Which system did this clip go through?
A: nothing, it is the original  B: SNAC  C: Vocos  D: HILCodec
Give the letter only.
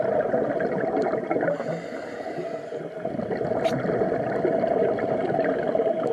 A